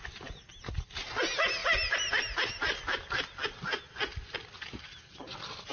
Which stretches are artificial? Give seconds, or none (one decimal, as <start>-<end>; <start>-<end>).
none